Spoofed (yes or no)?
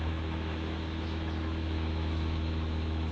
yes